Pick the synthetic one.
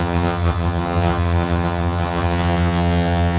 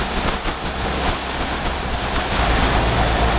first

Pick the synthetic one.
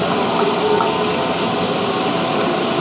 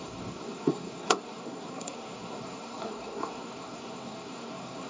second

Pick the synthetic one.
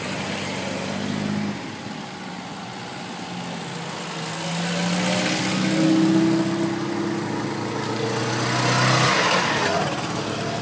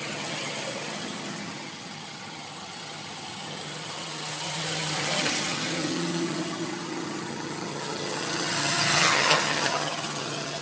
second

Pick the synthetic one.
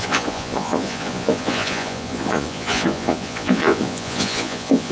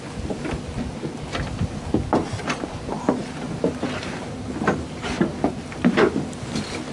first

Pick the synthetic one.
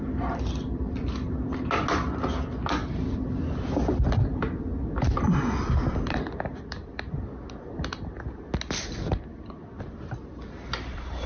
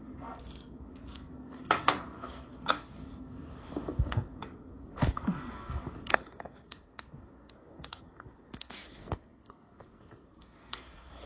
second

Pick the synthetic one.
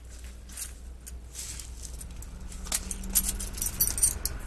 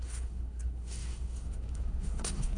second